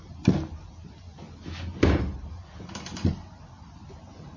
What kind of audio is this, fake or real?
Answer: real